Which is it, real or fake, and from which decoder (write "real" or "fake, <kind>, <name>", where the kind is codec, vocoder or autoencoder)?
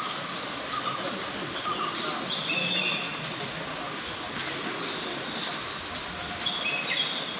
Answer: real